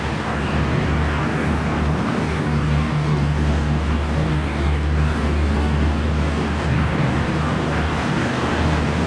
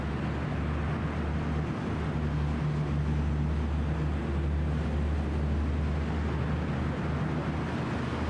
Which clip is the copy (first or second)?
first